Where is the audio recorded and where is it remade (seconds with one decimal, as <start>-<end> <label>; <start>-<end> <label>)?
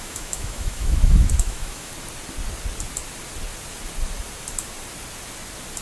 0.0-1.9 remade; 1.9-5.8 recorded